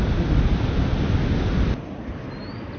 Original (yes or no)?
yes